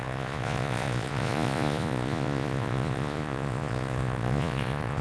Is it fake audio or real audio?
fake